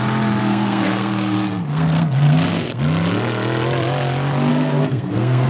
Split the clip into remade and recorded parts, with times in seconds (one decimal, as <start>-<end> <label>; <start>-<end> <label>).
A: 0.0-0.4 recorded; 0.4-2.8 remade; 2.8-4.5 recorded; 4.5-5.5 remade